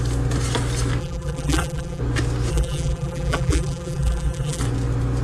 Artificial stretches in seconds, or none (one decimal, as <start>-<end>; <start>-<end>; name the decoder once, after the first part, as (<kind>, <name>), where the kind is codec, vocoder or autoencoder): 1.0-2.0 (vocoder, BigVGAN v2); 2.5-4.6